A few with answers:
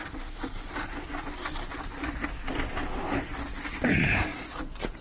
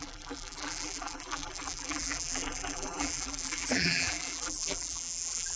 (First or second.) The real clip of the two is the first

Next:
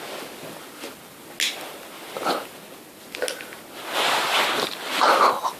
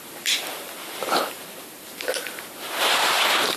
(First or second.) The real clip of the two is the first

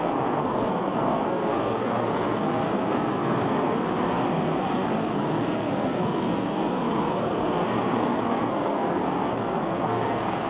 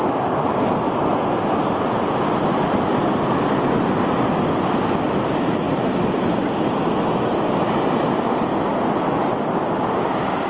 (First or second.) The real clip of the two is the second